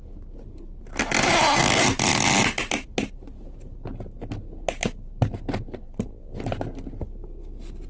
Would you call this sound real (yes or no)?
yes